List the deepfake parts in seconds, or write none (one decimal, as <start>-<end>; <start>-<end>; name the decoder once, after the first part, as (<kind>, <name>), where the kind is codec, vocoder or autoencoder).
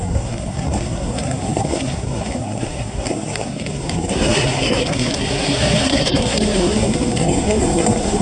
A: 0.0-8.2 (codec, SNAC)